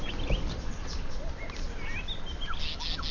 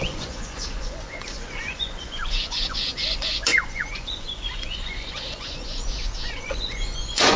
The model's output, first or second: second